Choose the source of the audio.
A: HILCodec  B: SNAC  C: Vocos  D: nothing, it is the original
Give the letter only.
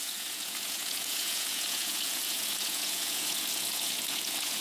C